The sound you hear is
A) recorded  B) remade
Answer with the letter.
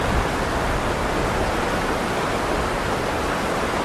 A